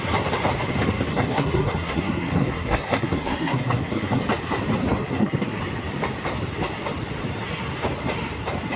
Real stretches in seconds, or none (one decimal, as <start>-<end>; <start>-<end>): 0.0-1.1; 4.2-5.0; 5.6-8.8